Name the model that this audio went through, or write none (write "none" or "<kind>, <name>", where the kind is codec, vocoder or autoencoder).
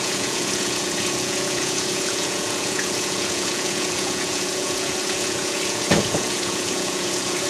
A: vocoder, Vocos